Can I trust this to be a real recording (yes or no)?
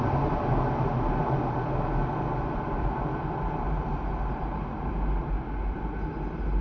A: yes